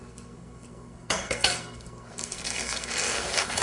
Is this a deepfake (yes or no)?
yes